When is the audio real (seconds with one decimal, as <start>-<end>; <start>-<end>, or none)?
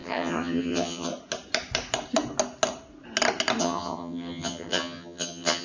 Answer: 1.1-3.6